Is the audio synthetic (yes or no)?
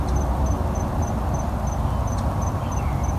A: no